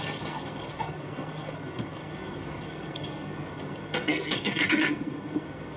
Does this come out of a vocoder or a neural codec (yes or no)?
yes